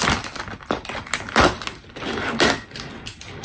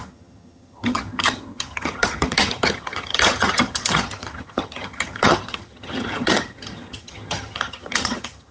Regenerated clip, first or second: second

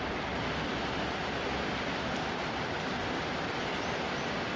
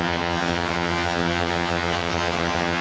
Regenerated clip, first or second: second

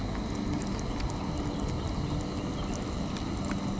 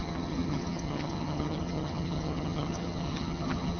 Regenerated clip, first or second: second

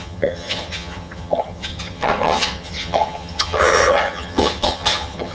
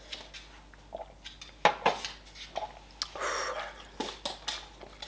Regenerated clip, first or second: first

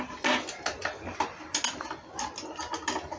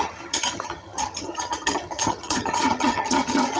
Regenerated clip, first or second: second